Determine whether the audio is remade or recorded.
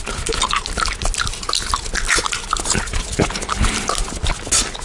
recorded